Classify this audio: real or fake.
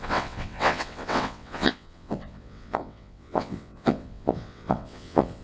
fake